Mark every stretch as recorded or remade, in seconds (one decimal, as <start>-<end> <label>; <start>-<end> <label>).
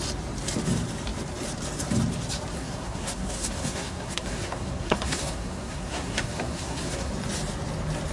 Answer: 0.0-2.5 recorded; 2.5-7.1 remade; 7.1-8.1 recorded